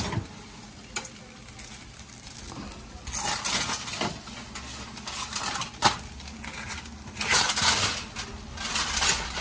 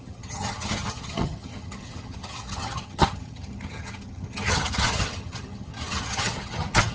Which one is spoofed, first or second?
second